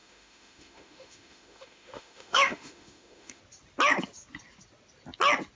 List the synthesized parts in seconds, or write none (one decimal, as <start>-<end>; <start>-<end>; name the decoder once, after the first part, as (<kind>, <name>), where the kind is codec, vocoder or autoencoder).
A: 0.0-3.4 (autoencoder, DAC-VAE)